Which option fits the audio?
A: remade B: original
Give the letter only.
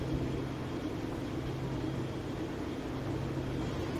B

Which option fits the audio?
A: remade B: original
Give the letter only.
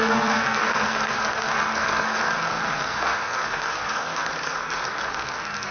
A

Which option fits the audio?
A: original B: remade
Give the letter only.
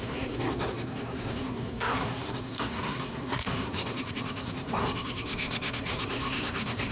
B